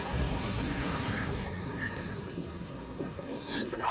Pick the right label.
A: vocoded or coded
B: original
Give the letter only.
A